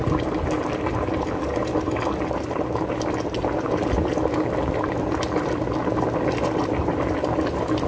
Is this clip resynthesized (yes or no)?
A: no